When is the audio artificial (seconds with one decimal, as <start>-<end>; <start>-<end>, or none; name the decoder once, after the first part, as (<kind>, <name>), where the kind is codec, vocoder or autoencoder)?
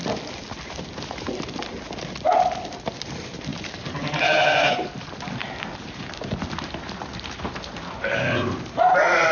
3.5-4.7 (vocoder, BigVGAN v2); 5.4-6.0